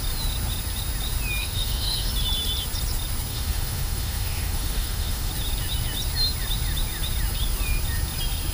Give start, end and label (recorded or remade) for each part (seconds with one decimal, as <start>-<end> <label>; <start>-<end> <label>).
0.0-1.4 recorded; 1.4-2.1 remade; 2.1-3.3 recorded; 3.3-5.3 remade; 5.3-8.5 recorded